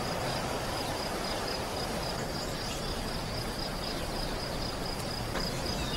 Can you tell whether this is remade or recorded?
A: recorded